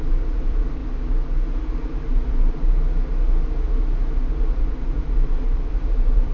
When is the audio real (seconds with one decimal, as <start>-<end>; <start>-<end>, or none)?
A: 0.8-4.6